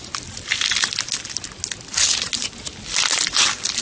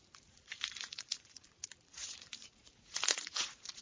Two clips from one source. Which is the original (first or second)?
first